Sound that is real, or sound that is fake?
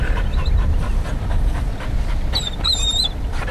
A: real